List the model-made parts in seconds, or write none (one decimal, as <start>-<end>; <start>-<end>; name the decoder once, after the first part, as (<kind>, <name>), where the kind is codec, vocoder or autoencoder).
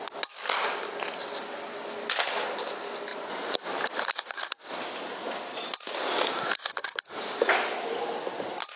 none